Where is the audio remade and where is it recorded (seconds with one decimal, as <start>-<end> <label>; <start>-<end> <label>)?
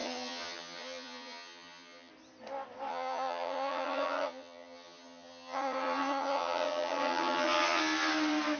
0.0-2.1 remade; 2.1-2.9 recorded; 2.9-7.8 remade; 7.8-8.6 recorded